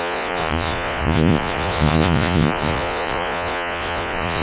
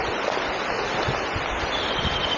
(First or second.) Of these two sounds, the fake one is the first